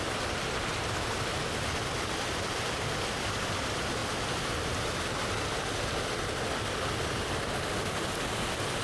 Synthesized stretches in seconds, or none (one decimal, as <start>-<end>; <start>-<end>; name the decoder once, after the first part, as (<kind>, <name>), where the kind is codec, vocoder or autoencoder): none